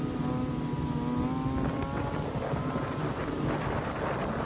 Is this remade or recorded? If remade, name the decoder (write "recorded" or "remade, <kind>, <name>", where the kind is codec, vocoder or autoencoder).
recorded